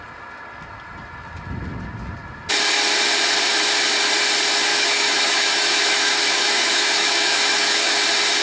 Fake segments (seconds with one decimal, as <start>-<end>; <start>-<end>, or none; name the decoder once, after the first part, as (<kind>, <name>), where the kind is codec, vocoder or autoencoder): 4.7-8.0 (autoencoder, DAC-VAE)